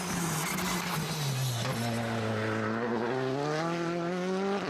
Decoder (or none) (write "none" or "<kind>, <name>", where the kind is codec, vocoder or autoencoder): none